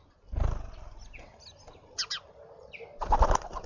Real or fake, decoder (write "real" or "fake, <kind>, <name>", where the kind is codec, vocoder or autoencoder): real